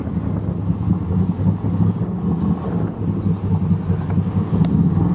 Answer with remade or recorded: recorded